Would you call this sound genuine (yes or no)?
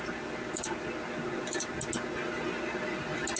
yes